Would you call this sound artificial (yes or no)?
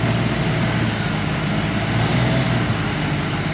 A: no